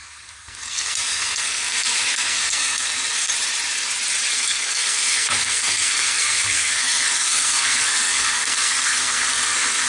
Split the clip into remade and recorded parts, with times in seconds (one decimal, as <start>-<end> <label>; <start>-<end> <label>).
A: 0.0-3.3 remade; 3.3-4.3 recorded; 4.3-9.9 remade